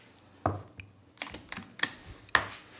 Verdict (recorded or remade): recorded